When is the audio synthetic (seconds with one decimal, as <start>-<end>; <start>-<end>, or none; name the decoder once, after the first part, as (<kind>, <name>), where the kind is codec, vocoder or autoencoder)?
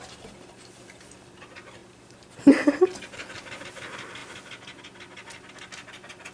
none